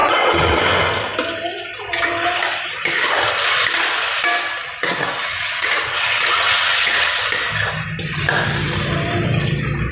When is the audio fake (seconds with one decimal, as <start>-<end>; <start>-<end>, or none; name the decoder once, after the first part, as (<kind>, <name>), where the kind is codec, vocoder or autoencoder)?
0.0-0.6 (vocoder, WaveNeXt); 4.6-7.2